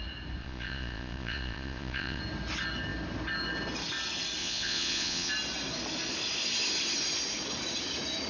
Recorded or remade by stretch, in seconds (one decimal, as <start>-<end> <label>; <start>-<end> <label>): 0.0-0.4 recorded; 0.4-2.2 remade; 2.2-4.4 recorded; 4.4-5.3 remade; 5.3-8.3 recorded